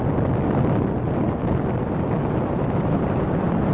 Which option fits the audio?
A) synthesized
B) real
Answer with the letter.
B